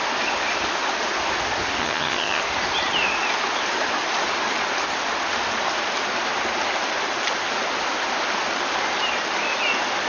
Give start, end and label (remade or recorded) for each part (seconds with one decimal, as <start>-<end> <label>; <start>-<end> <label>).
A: 0.0-1.8 recorded; 1.8-2.4 remade; 2.4-10.1 recorded